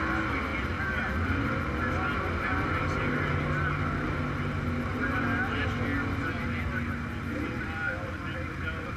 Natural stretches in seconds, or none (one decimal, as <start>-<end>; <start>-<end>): 0.0-9.0